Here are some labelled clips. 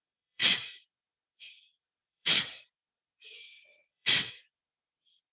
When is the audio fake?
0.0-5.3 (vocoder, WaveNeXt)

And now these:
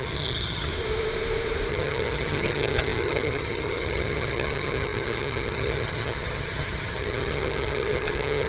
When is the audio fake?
0.0-0.7 (vocoder, HiFi-GAN); 1.7-8.5

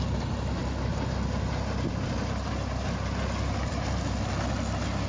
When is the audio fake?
none